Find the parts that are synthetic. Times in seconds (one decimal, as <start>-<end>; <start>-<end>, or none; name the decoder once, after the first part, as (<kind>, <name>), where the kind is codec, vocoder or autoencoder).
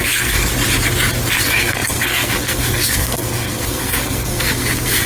0.0-0.5 (codec, SNAC); 1.4-5.1